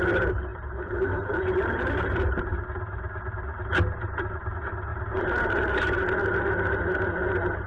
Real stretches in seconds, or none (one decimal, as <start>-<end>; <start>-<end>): 0.0-0.5; 2.4-4.9; 6.1-7.7